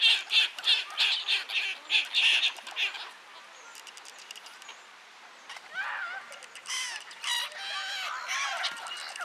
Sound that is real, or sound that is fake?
real